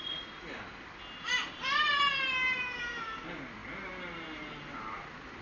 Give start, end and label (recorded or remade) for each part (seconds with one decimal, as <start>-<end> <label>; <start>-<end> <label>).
0.0-1.3 recorded; 1.3-2.1 remade; 2.1-5.4 recorded

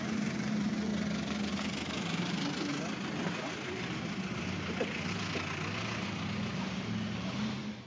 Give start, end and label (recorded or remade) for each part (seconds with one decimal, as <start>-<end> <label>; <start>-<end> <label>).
0.0-0.9 remade; 0.9-1.5 recorded; 1.5-2.7 remade; 2.7-7.4 recorded; 7.4-7.9 remade

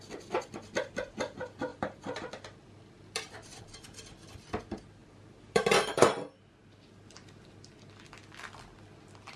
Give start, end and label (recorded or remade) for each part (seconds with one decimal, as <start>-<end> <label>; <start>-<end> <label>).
0.0-1.7 recorded; 1.7-3.6 remade; 3.6-5.0 recorded; 5.0-6.5 remade; 6.5-9.4 recorded

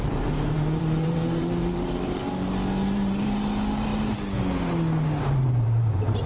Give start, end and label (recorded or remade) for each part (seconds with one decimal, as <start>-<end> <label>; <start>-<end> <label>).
0.0-2.2 remade; 2.2-2.8 recorded; 2.8-3.9 remade; 3.9-5.2 recorded; 5.2-6.3 remade

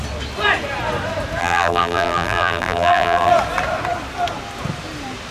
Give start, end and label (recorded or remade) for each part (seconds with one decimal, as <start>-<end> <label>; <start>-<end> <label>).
0.0-1.4 recorded; 1.4-3.3 remade; 3.3-5.3 recorded

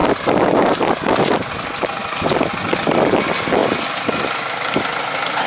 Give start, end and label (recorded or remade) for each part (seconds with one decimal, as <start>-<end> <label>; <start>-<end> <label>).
0.0-2.0 recorded; 2.0-2.8 remade; 2.8-3.6 recorded; 3.6-4.8 remade; 4.8-5.5 recorded

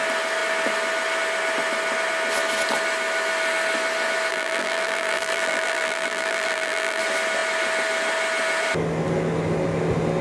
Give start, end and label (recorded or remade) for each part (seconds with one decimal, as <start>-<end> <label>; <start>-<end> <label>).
0.0-4.3 recorded; 4.3-7.0 remade; 7.0-10.2 recorded

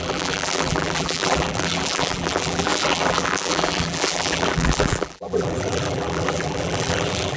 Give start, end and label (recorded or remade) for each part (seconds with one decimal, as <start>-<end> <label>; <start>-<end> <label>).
0.0-7.4 remade